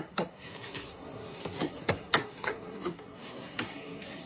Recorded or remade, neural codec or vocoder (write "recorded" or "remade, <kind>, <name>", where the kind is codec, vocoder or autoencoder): remade, codec, SNAC